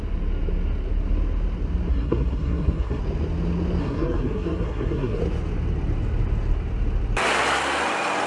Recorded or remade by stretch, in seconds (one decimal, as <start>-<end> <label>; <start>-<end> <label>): 0.0-1.9 recorded; 1.9-3.0 remade; 3.0-3.8 recorded; 3.8-5.2 remade; 5.2-8.3 recorded